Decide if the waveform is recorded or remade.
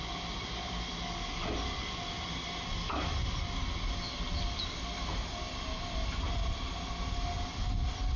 recorded